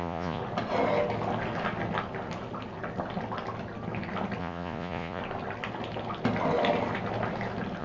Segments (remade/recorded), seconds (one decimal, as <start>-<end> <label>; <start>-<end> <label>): 0.0-0.4 remade; 0.4-4.4 recorded; 4.4-5.2 remade; 5.2-7.8 recorded